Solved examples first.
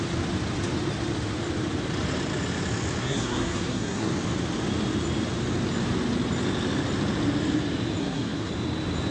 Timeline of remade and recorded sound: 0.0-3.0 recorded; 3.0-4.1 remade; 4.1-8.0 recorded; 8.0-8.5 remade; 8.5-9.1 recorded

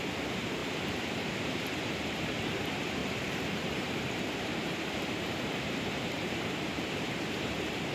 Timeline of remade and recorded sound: 0.0-0.6 remade; 0.6-1.1 recorded; 1.1-7.9 remade

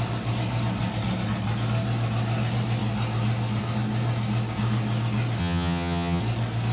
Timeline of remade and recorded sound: 0.0-5.4 recorded; 5.4-6.2 remade; 6.2-6.7 recorded

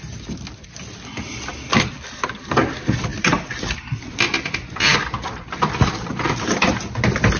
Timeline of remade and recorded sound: 0.0-3.1 recorded; 3.1-6.5 remade; 6.5-7.4 recorded

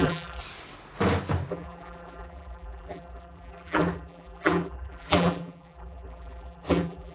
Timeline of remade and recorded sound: 0.0-0.4 remade; 0.4-1.5 recorded; 1.5-7.1 remade